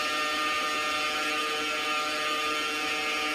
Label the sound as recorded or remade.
recorded